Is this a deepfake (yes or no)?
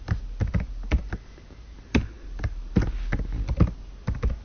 no